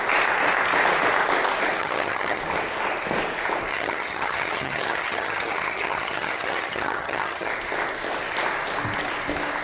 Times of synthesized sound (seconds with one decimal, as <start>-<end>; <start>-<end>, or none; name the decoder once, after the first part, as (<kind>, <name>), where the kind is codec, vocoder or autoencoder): 1.8-2.4 (vocoder, HiFi-GAN); 3.7-7.5